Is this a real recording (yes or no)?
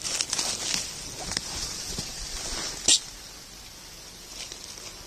yes